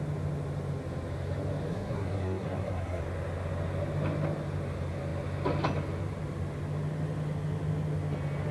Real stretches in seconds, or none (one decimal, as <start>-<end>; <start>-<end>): 0.0-1.7; 3.0-8.5